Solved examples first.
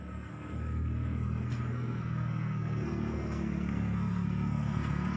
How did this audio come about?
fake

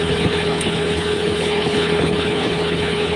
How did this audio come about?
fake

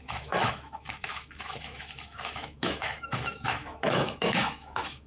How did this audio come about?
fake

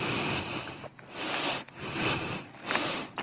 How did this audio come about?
fake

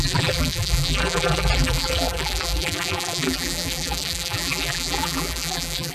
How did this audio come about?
fake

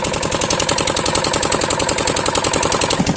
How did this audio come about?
real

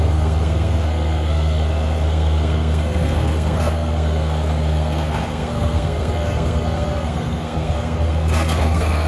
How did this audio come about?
fake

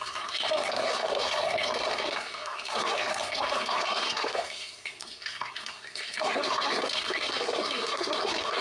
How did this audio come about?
fake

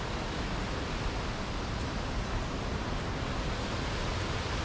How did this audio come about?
real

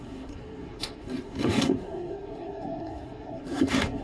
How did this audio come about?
fake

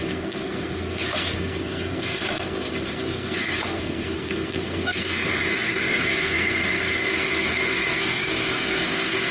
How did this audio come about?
fake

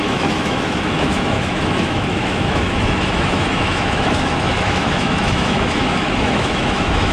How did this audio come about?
fake